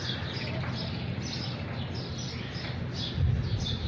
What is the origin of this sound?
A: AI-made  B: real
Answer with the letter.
B